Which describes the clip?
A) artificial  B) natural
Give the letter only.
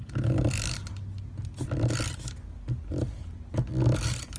B